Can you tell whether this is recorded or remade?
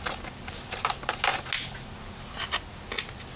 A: recorded